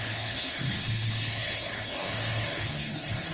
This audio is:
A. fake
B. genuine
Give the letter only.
A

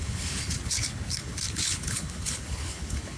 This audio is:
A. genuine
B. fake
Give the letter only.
B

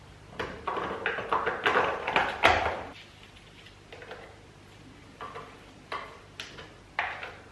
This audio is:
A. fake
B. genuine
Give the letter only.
B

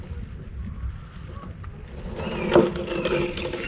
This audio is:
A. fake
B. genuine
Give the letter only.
B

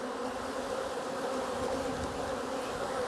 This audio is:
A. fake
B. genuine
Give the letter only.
B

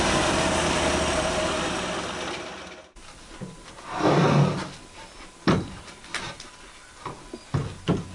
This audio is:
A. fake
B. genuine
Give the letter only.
B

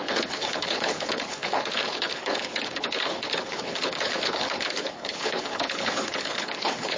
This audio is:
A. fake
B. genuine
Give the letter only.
A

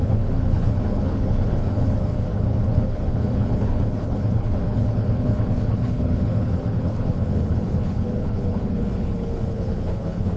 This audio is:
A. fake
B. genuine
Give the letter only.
A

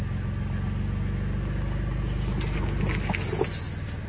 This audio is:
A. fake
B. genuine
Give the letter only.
B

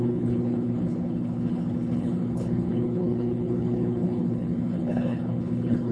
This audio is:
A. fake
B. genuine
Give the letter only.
A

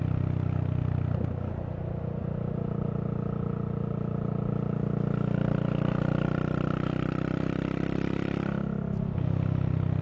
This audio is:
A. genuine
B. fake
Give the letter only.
A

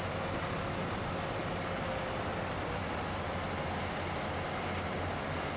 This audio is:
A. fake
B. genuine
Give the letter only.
B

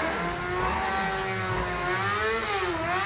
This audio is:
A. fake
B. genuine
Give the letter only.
B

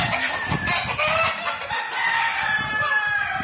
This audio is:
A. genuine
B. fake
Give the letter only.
A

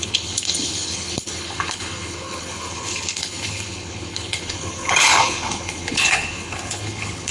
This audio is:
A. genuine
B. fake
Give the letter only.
B